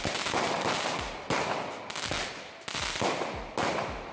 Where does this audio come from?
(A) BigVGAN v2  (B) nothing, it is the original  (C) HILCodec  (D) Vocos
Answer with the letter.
B